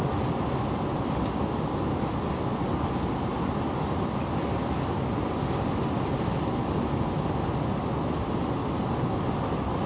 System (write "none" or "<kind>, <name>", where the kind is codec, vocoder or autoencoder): none